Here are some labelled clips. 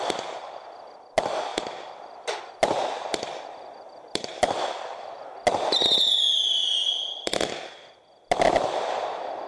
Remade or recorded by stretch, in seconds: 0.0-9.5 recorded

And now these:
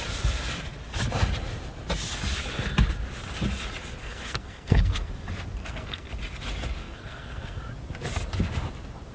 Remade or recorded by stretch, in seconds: 0.0-4.0 recorded; 4.0-5.1 remade; 5.1-5.6 recorded; 5.6-6.1 remade; 6.1-6.8 recorded; 6.8-7.6 remade; 7.6-9.1 recorded

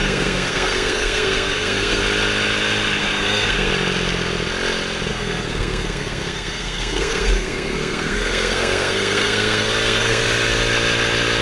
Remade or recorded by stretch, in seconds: 0.0-2.0 remade; 2.0-3.0 recorded; 3.0-3.7 remade; 3.7-5.1 recorded; 5.1-10.2 remade; 10.2-11.4 recorded